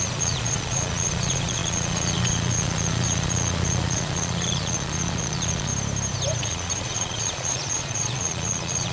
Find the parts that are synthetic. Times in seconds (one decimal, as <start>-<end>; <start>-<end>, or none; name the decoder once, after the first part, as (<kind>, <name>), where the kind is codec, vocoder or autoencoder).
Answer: 0.0-5.7 (vocoder, Vocos); 6.4-8.9